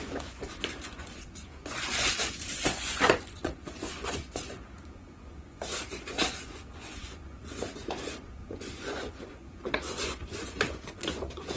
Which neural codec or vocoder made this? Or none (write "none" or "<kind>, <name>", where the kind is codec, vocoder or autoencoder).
vocoder, Vocos